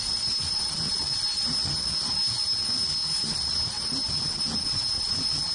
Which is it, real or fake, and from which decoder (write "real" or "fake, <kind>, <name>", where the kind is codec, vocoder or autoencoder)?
real